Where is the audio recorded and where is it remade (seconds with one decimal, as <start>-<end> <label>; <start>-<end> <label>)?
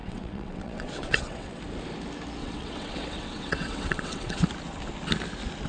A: 0.0-1.6 remade; 1.6-2.4 recorded; 2.4-4.4 remade; 4.4-5.7 recorded